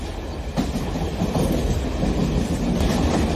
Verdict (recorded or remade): recorded